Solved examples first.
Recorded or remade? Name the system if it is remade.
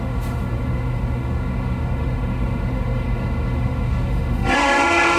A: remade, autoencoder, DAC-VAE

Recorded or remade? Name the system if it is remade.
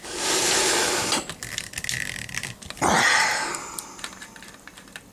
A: recorded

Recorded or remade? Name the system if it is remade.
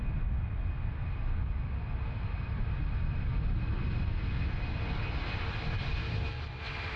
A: recorded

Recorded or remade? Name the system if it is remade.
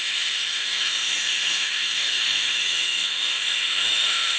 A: remade, autoencoder, DAC-VAE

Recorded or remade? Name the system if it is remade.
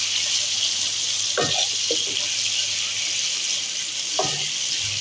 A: recorded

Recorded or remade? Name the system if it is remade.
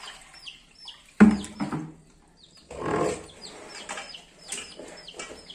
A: recorded